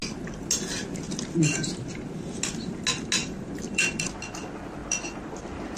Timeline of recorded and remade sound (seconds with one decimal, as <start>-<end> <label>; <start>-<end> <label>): 0.0-3.2 recorded; 3.2-4.1 remade; 4.1-4.8 recorded; 4.8-5.8 remade